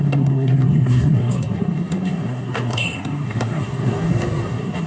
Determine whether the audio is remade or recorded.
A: remade